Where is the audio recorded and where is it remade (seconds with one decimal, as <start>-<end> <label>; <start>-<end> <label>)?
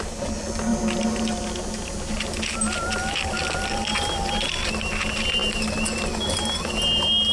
0.0-7.3 recorded